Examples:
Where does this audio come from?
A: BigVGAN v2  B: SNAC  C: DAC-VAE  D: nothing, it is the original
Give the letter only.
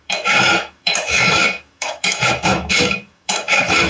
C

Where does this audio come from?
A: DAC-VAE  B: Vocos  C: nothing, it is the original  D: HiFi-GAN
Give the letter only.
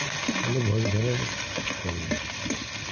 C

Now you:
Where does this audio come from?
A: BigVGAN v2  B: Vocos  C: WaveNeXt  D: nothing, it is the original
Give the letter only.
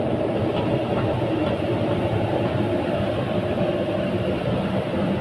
A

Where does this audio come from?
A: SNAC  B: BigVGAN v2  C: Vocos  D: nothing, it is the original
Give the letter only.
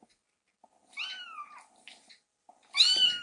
D